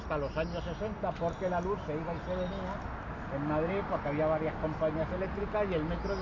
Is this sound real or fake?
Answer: real